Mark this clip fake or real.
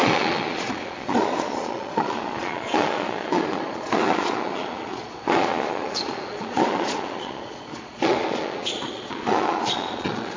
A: fake